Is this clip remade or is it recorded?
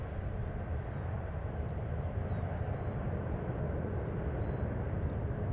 recorded